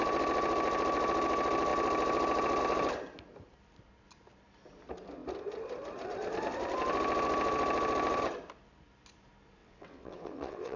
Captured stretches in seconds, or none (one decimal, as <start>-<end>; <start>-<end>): 0.0-9.6